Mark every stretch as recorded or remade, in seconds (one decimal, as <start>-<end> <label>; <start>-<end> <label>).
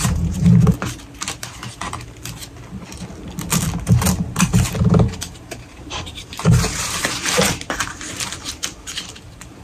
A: 0.0-0.5 remade; 0.5-1.4 recorded; 1.4-2.4 remade; 2.4-4.9 recorded; 4.9-9.6 remade